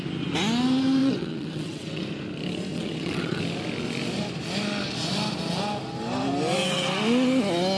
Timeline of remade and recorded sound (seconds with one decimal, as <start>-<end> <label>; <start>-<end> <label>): 0.0-1.0 recorded; 1.0-2.0 remade; 2.0-2.7 recorded; 2.7-3.4 remade; 3.4-7.8 recorded